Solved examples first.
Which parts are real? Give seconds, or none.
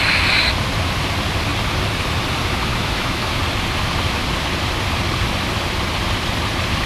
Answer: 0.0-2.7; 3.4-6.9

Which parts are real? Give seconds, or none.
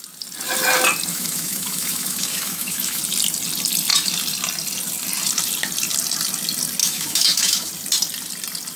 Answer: 0.0-1.1; 3.0-6.8; 7.7-8.8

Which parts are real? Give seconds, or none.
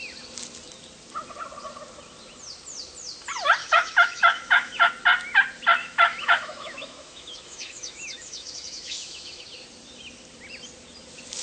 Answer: 0.0-3.6; 4.9-5.8; 9.4-11.4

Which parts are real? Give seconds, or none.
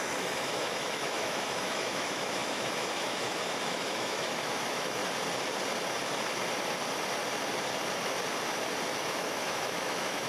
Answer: 5.0-9.0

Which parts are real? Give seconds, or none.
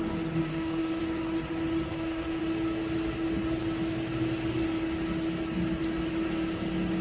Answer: 0.0-0.5; 1.0-1.9; 2.4-7.0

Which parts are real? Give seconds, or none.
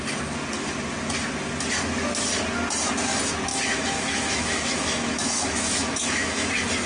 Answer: 0.0-3.5; 6.5-6.9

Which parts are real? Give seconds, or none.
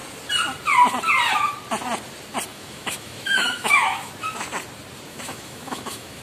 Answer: 0.0-2.5; 4.1-5.1